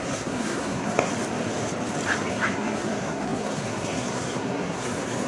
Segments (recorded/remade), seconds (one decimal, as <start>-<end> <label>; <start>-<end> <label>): 0.0-1.1 remade; 1.1-2.3 recorded; 2.3-5.3 remade